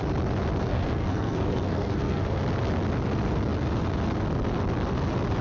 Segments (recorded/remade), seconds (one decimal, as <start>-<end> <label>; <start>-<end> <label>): 0.0-0.7 recorded; 0.7-2.4 remade; 2.4-5.4 recorded